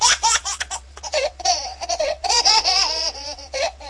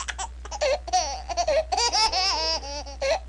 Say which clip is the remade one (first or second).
first